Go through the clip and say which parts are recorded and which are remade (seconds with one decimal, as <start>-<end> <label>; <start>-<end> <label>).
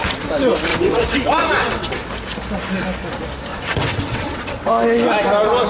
0.0-0.7 recorded; 0.7-2.0 remade; 2.0-3.5 recorded; 3.5-4.7 remade; 4.7-5.7 recorded